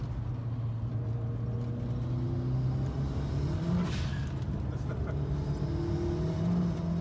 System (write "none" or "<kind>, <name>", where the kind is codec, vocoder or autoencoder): none